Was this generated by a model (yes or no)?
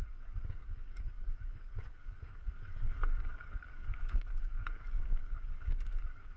yes